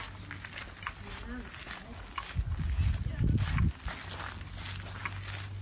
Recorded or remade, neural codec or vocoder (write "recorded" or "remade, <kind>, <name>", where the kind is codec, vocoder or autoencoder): recorded